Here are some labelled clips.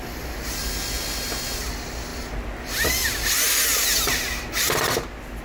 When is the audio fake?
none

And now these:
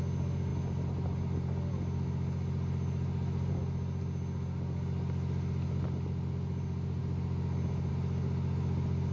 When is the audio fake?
none

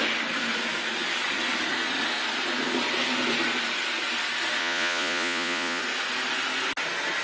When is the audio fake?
4.6-5.8

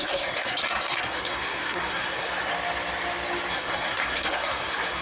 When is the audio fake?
0.0-2.5; 3.5-5.0

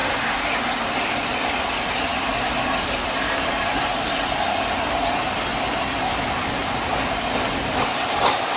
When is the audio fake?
2.1-4.1; 6.6-7.5

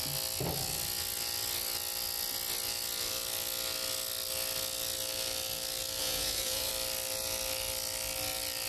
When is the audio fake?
6.0-6.7